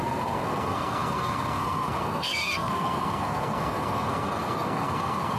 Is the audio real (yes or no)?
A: no